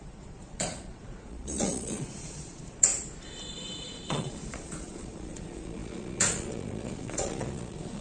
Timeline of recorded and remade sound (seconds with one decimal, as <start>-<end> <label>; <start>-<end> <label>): 0.0-2.9 remade; 2.9-4.1 recorded; 4.1-8.0 remade